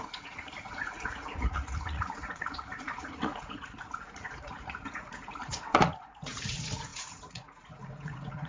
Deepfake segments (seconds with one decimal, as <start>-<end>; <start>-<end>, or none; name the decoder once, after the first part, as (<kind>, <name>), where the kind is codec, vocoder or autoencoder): 0.0-8.5 (vocoder, Vocos)